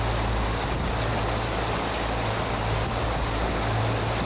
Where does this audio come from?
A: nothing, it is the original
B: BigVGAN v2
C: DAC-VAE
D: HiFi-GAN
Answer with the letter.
A